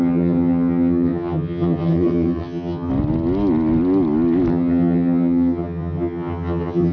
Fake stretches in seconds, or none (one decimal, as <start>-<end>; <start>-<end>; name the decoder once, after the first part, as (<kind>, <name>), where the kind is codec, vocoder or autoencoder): 0.0-2.9 (vocoder, HiFi-GAN); 4.5-6.9